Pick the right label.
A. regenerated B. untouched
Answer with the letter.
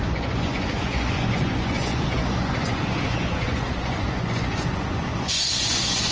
A